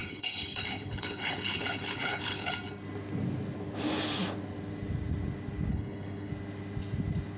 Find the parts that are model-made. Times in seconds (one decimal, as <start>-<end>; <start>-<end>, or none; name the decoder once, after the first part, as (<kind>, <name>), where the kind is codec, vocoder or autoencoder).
0.0-2.5 (codec, HILCodec); 5.7-6.3